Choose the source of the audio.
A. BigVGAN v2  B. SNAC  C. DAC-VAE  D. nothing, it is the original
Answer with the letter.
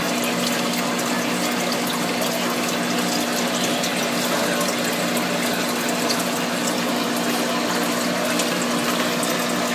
D